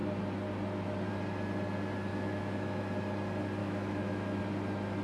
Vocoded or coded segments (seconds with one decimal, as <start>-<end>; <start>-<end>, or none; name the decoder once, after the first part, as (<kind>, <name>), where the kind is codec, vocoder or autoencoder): 2.1-2.8 (autoencoder, DAC-VAE); 3.6-4.4